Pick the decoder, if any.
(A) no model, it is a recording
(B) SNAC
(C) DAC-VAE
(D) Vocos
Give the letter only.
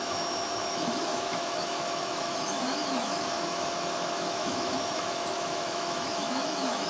C